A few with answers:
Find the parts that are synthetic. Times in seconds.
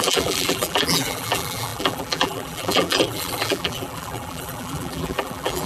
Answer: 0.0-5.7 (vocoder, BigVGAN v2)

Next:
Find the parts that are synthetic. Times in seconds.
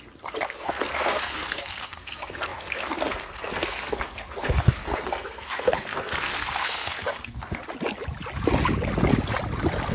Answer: 0.0-7.6 (codec, SNAC)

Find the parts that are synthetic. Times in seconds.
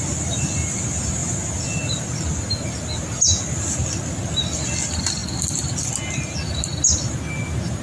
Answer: none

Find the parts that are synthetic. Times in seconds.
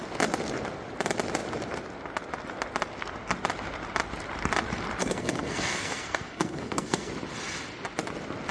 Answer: 5.0-7.1 (codec, SNAC)